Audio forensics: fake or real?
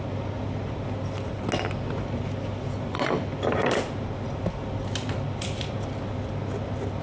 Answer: real